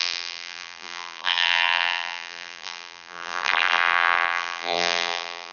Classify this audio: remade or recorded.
remade